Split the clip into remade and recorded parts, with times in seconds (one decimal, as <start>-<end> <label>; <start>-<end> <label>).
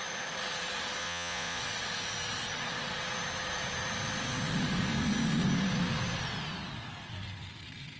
0.0-1.0 recorded; 1.0-1.6 remade; 1.6-8.0 recorded